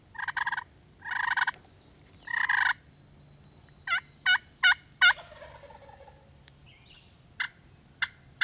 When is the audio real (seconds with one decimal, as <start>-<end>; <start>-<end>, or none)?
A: 0.0-8.4